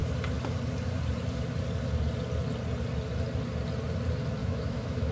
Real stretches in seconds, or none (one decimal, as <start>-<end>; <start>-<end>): 0.0-4.4